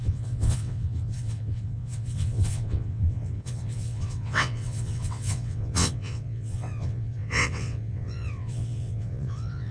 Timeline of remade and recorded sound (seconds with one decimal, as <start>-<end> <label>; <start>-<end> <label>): 0.0-9.7 remade